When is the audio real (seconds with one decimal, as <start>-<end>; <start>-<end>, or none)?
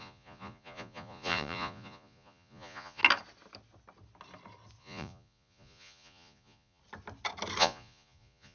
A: 3.0-4.8; 6.8-7.6